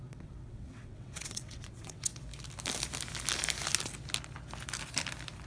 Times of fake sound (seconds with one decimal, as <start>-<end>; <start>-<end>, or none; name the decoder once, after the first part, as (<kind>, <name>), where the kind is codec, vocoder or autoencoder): 0.0-2.1 (vocoder, WaveNeXt)

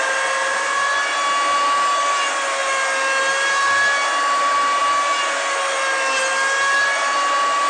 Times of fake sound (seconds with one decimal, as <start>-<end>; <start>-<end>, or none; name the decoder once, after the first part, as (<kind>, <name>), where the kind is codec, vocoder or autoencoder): none

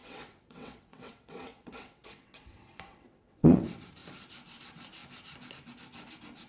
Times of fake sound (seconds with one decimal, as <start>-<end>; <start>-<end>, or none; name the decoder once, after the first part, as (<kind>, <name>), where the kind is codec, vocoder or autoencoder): 0.0-3.6 (vocoder, WaveNeXt)

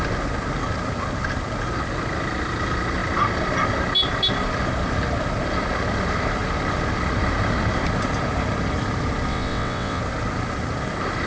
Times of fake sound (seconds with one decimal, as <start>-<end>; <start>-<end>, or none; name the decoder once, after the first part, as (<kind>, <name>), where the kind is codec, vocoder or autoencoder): 9.3-10.0 (vocoder, WaveNeXt)

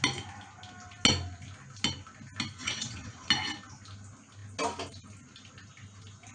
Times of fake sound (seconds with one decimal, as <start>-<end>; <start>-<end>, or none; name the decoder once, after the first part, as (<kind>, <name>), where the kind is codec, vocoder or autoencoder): 2.6-3.3 (vocoder, WaveNeXt)